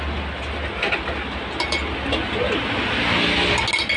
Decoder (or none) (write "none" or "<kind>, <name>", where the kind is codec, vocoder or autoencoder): none